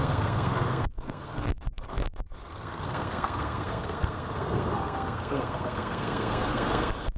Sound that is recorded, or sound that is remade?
remade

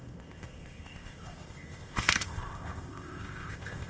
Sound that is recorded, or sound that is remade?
remade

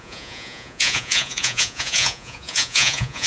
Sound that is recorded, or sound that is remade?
remade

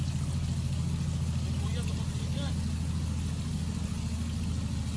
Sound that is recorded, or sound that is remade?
recorded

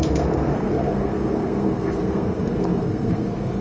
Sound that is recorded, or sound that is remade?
remade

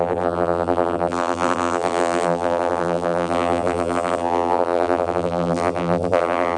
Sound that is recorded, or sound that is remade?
remade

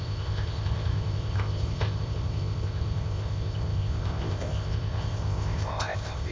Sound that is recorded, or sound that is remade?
remade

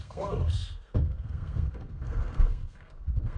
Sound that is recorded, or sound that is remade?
remade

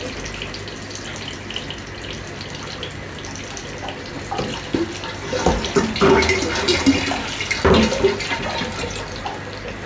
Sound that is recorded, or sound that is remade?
recorded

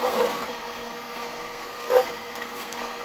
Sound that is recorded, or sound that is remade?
remade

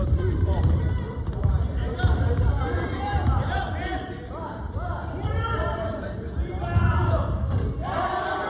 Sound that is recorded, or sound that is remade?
remade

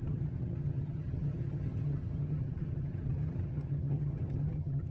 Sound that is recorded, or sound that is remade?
remade